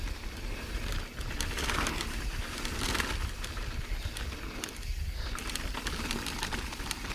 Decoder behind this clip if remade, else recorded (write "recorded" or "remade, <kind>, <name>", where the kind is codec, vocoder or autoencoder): recorded